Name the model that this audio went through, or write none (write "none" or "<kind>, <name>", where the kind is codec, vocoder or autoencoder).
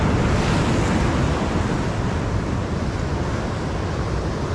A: none